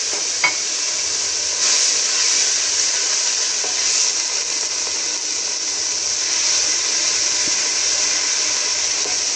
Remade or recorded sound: recorded